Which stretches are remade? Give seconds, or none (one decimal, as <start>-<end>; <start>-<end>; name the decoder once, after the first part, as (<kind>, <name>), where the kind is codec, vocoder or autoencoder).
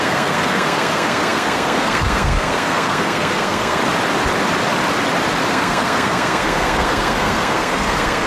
0.0-3.8 (codec, SNAC); 5.5-8.3